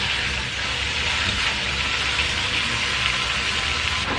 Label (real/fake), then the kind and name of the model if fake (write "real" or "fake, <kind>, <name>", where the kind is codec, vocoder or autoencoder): real